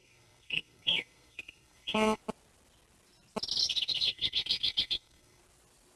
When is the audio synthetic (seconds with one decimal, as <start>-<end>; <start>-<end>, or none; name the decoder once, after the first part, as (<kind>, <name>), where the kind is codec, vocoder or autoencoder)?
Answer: 0.0-2.2 (codec, SNAC); 3.6-5.4